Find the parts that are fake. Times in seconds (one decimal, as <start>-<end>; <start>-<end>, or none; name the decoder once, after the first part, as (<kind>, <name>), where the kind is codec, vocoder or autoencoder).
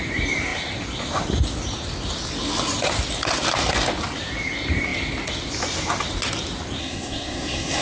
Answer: 6.8-7.8 (codec, SNAC)